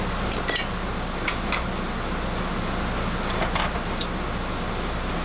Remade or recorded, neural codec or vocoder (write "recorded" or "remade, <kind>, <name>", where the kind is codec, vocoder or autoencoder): recorded